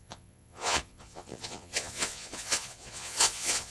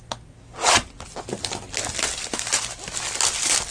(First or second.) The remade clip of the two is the first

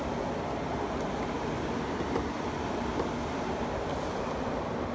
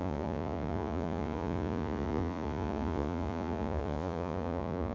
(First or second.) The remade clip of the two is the second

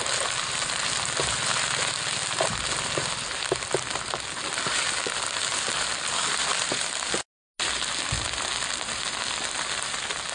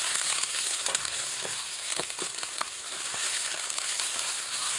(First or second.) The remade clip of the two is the second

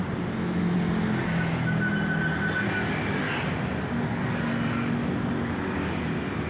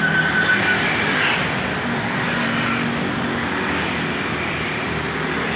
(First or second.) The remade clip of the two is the second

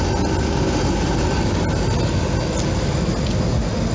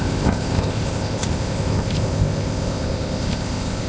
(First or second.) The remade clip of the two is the second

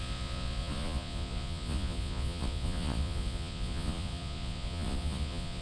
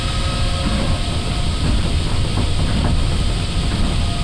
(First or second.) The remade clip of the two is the first